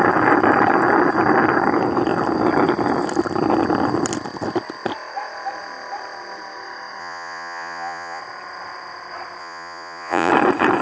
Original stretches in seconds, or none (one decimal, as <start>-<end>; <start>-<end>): 0.0-7.0; 8.2-9.4; 10.3-10.8